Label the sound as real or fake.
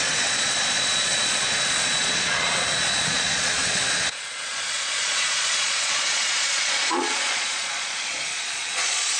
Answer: fake